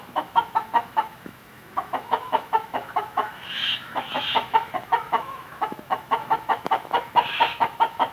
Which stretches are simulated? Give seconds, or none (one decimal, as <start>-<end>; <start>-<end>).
0.0-8.1